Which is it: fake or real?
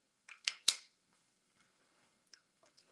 fake